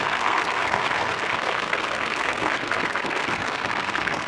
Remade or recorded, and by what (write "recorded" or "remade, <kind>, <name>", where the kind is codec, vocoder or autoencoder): remade, codec, SNAC